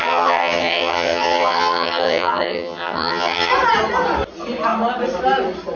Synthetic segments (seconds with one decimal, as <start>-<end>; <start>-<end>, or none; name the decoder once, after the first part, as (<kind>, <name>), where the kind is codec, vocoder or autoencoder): 0.0-3.5 (vocoder, HiFi-GAN)

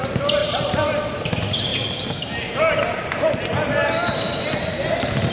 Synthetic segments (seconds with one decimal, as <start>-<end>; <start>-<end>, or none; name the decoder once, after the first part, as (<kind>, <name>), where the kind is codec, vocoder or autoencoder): none